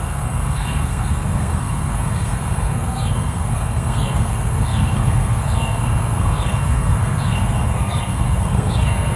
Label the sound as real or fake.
fake